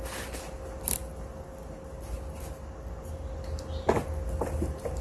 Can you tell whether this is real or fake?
real